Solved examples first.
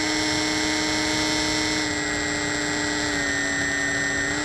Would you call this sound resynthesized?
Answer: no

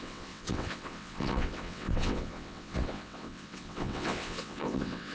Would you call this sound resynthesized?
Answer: yes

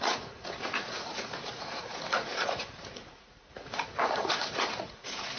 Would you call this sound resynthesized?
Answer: yes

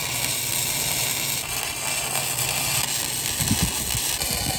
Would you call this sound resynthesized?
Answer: no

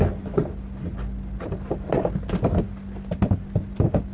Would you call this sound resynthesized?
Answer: no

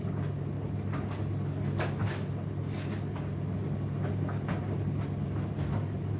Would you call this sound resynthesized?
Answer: no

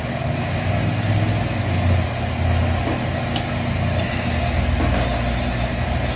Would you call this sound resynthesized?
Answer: no